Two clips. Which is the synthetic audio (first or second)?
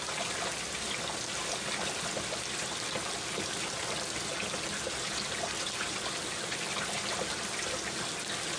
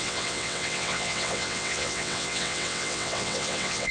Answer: second